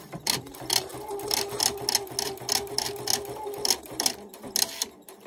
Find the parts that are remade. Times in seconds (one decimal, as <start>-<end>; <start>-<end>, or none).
none